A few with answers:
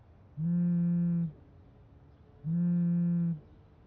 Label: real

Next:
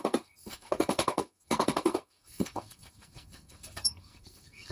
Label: fake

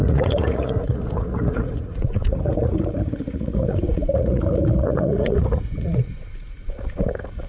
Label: fake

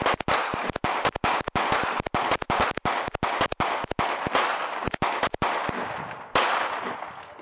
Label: real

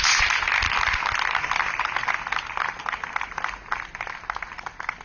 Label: real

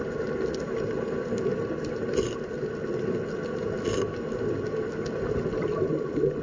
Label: real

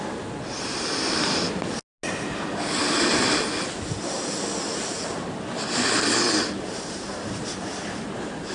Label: real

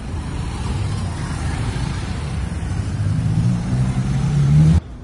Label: fake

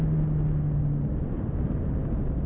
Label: real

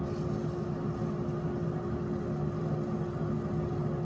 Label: real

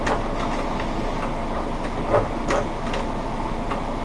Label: real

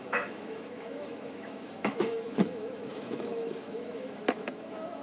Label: fake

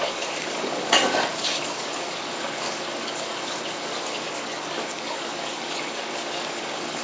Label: fake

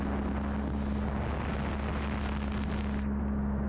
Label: real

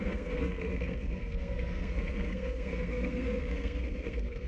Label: fake